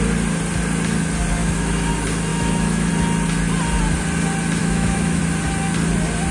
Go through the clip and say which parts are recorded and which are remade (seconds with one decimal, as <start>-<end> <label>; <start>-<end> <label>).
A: 0.0-1.4 recorded; 1.4-1.9 remade; 1.9-2.3 recorded; 2.3-2.9 remade; 2.9-4.6 recorded; 4.6-5.2 remade; 5.2-6.3 recorded

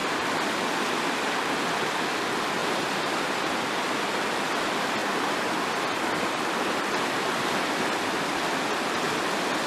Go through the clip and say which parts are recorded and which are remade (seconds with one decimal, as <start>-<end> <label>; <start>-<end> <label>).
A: 0.0-2.6 recorded; 2.6-3.6 remade; 3.6-9.7 recorded

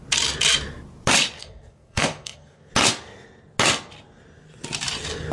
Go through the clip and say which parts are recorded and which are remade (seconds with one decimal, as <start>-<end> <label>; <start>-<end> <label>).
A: 0.0-1.4 recorded; 1.4-2.7 remade; 2.7-5.3 recorded

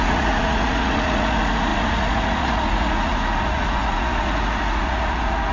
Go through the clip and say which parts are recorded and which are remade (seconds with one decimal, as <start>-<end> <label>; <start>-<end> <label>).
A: 0.0-5.5 remade

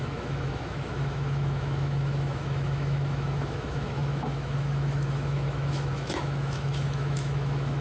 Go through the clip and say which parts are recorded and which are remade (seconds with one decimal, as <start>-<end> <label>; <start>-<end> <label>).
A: 0.0-7.8 remade

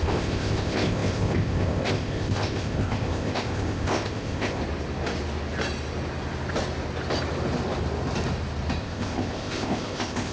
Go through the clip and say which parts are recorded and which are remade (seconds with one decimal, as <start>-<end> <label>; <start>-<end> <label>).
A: 0.0-4.6 remade; 4.6-8.8 recorded; 8.8-10.3 remade

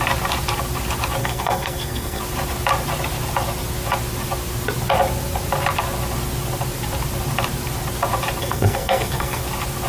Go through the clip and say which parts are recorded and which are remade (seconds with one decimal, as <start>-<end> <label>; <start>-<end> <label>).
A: 0.0-1.2 recorded; 1.2-2.2 remade; 2.2-8.4 recorded; 8.4-9.4 remade; 9.4-9.9 recorded